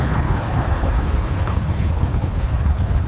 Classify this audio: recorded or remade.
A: remade